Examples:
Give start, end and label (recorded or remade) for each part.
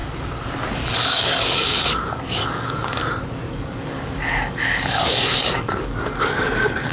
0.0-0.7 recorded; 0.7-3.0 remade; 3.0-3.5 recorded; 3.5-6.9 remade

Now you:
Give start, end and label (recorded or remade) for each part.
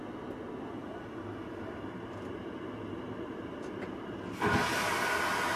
0.0-0.8 recorded; 0.8-4.2 remade; 4.2-5.6 recorded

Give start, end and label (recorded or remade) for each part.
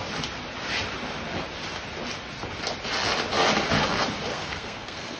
0.0-4.3 recorded; 4.3-5.2 remade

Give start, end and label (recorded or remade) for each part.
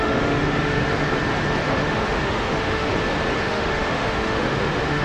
0.0-1.0 remade; 1.0-1.6 recorded; 1.6-2.9 remade; 2.9-3.4 recorded; 3.4-5.0 remade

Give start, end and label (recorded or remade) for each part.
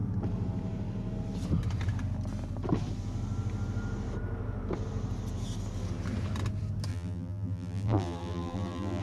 0.0-6.9 recorded; 6.9-9.0 remade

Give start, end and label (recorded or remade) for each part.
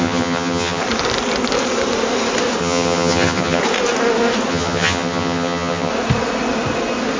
0.0-0.8 remade; 0.8-2.6 recorded; 2.6-3.6 remade; 3.6-4.5 recorded; 4.5-5.9 remade; 5.9-7.2 recorded